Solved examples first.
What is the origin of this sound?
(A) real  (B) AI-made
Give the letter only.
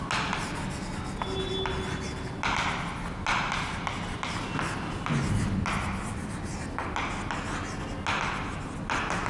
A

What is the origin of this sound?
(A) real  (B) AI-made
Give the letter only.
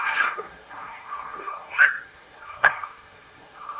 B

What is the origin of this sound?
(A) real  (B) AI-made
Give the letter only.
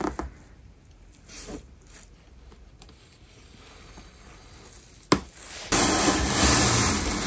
A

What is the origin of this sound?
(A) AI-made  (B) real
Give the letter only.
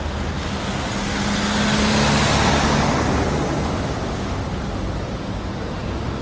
B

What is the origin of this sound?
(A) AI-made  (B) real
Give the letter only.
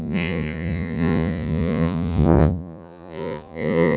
A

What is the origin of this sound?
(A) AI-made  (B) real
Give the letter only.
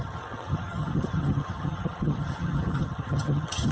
A